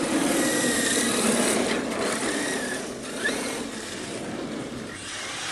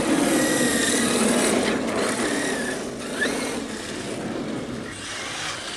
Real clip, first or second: second